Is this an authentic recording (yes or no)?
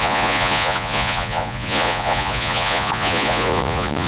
no